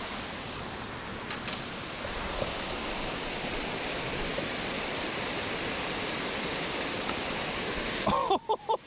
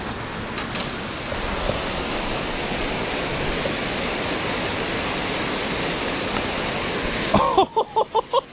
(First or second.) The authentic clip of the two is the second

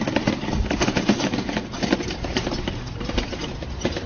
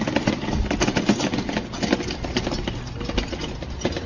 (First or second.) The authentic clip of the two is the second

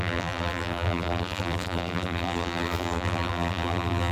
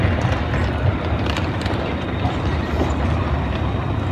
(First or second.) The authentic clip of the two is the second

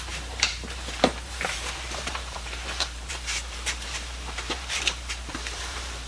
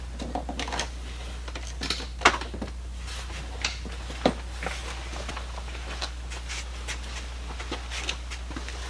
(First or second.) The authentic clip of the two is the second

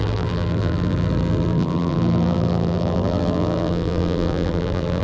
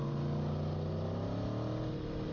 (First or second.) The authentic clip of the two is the second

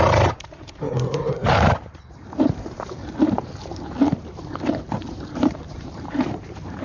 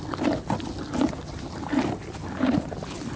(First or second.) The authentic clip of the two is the second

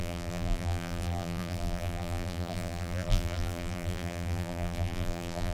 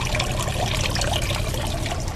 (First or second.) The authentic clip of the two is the second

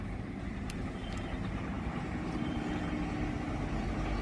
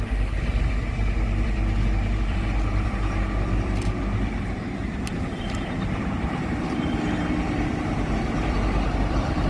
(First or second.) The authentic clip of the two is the first